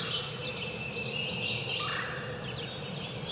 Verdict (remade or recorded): recorded